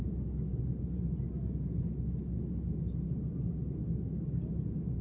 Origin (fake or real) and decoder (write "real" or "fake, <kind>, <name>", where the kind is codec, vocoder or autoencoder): real